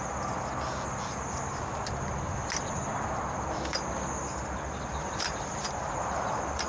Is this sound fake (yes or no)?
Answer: no